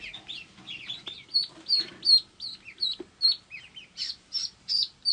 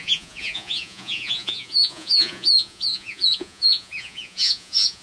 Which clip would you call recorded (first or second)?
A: first